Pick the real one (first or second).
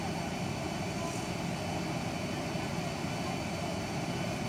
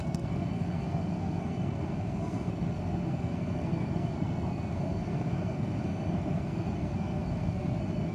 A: first